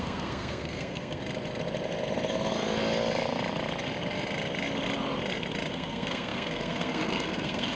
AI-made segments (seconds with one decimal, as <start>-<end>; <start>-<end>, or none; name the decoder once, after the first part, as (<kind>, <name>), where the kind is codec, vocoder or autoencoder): 0.0-1.2 (codec, SNAC); 5.7-7.8

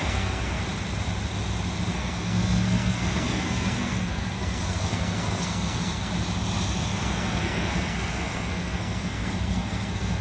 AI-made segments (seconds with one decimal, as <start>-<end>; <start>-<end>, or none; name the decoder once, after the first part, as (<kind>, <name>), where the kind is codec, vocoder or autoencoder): 0.0-0.6 (codec, SNAC); 1.9-6.1; 6.8-10.2

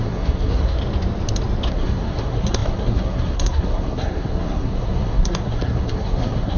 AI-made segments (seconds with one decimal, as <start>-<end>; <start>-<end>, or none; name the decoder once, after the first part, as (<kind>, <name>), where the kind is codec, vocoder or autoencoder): 0.0-0.8 (codec, SNAC); 1.7-6.6

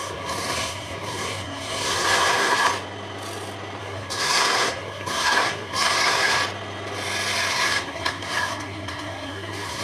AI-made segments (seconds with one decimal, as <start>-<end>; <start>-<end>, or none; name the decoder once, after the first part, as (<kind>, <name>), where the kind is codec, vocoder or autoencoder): 0.0-2.7 (codec, SNAC); 3.8-6.4; 7.5-9.8

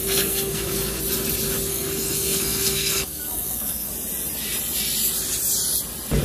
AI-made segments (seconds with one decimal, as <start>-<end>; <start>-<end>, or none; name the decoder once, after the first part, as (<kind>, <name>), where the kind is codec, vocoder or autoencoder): 0.0-1.0 (codec, SNAC); 1.7-3.9

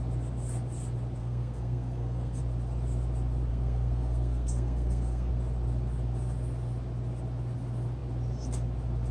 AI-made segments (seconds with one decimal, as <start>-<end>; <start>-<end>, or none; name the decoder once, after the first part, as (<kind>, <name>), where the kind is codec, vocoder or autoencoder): 1.2-2.4 (codec, SNAC); 3.5-5.3

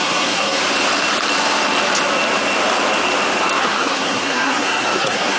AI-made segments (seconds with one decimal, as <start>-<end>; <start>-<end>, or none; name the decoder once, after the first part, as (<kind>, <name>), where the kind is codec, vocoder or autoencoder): 0.0-0.6 (codec, SNAC); 3.6-5.4